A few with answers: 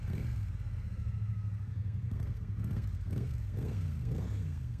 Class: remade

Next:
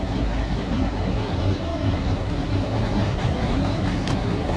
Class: remade